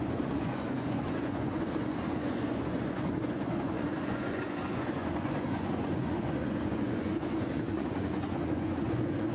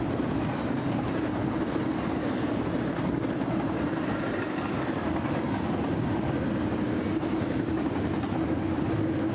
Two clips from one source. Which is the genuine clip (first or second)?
second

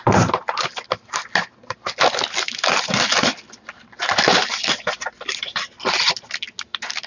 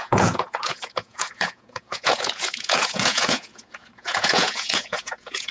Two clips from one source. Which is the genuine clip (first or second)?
first